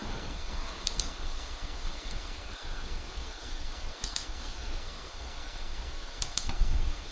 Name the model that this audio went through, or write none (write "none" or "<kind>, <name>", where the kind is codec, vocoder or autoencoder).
codec, SNAC